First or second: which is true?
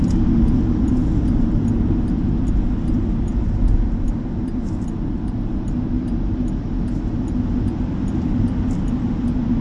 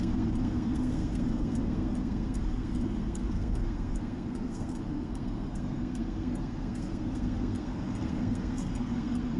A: first